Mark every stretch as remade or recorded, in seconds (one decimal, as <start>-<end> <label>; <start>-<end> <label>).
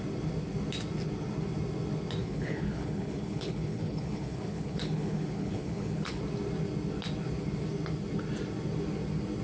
0.0-2.2 recorded; 2.2-6.2 remade; 6.2-9.4 recorded